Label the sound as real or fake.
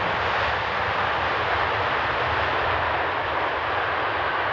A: real